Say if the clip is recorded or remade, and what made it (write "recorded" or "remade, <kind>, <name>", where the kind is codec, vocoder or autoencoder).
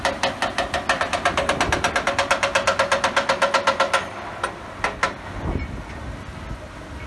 recorded